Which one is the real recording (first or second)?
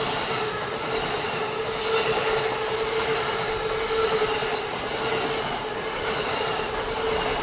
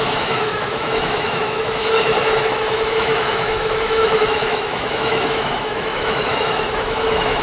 first